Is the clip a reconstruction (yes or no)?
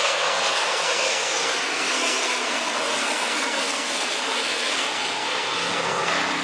yes